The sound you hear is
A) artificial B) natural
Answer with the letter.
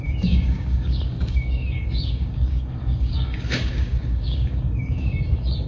A